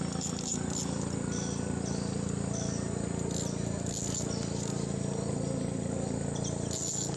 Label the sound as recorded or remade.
recorded